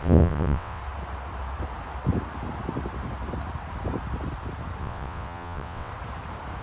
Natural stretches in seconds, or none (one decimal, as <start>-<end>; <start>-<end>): 0.8-4.8; 5.9-6.6